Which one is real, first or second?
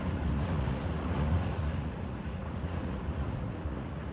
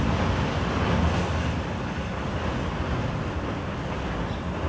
second